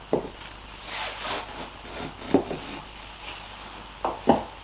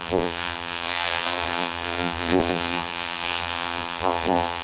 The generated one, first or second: second